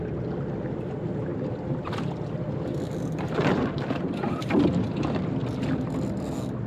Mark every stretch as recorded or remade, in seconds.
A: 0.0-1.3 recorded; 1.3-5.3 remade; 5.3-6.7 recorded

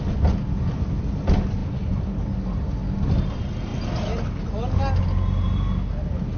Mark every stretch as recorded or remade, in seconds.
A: 0.0-6.4 recorded

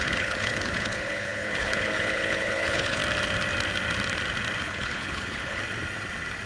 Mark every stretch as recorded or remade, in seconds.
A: 0.0-3.0 remade; 3.0-4.6 recorded; 4.6-5.6 remade; 5.6-6.5 recorded

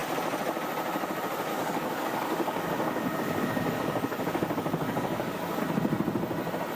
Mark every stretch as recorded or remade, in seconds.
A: 0.0-1.5 recorded; 1.5-5.6 remade; 5.6-6.8 recorded